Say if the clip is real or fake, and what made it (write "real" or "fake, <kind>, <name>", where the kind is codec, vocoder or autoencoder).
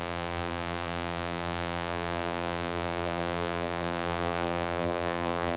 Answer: fake, vocoder, BigVGAN v2